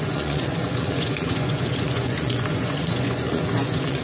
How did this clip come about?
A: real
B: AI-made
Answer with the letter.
B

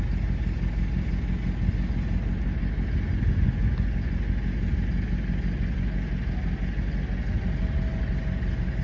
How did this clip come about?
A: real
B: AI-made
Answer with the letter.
A